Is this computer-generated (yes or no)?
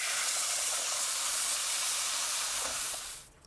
yes